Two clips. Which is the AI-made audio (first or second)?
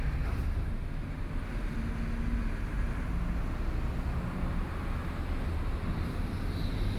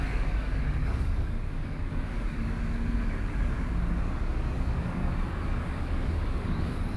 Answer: second